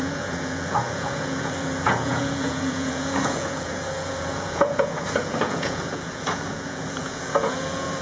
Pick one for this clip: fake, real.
fake